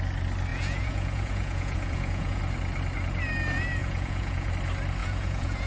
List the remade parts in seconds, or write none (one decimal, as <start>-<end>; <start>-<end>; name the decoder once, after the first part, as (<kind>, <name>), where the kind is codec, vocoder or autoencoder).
0.5-2.4 (vocoder, Vocos); 3.8-4.5; 5.0-5.7